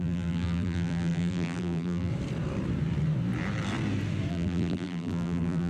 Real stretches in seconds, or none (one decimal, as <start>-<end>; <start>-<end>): 2.1-4.3